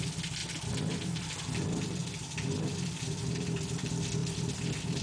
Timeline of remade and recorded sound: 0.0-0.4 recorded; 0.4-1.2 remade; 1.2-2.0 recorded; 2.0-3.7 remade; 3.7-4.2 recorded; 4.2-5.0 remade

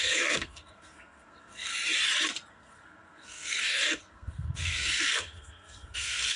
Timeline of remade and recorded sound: 0.0-1.7 remade; 1.7-2.5 recorded; 2.5-6.4 remade

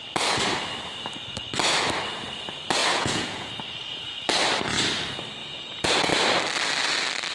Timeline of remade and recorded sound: 0.0-2.8 recorded; 2.8-3.5 remade; 3.5-5.4 recorded; 5.4-6.1 remade; 6.1-7.3 recorded

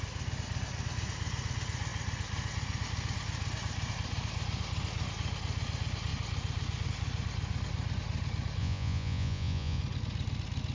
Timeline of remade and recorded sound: 0.0-8.6 recorded; 8.6-9.8 remade; 9.8-10.7 recorded

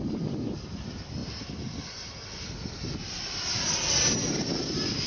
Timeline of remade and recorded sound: 0.0-1.2 remade; 1.2-4.3 recorded; 4.3-5.1 remade